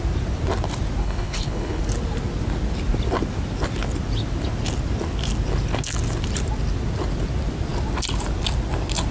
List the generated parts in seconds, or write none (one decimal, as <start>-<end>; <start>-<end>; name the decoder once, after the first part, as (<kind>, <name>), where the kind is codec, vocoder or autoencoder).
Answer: 1.0-1.8 (codec, HILCodec)